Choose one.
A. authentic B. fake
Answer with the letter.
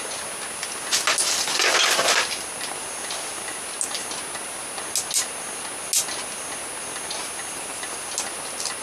A